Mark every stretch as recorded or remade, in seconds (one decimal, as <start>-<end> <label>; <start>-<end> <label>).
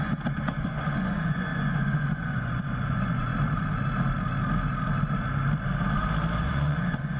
0.0-3.3 remade; 3.3-6.4 recorded; 6.4-7.2 remade